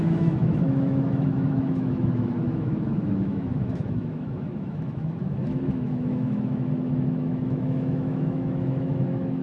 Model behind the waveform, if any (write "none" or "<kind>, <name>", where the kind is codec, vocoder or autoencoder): autoencoder, DAC-VAE